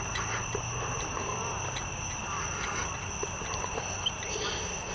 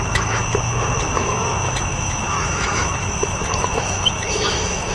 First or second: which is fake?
second